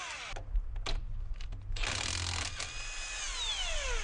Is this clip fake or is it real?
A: real